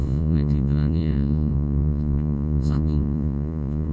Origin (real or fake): fake